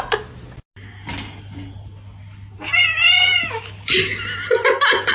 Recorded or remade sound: recorded